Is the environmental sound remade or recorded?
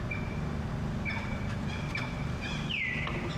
recorded